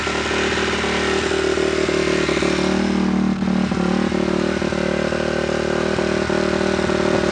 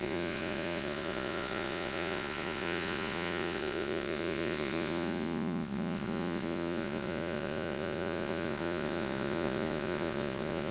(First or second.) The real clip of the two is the first